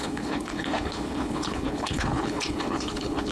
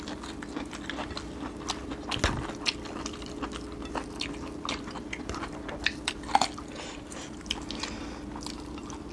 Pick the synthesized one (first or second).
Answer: first